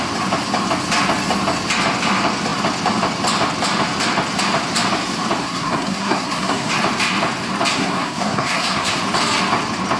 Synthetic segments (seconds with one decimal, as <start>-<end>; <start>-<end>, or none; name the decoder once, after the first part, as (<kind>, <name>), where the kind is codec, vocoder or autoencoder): 5.4-6.7 (codec, SNAC); 7.7-9.0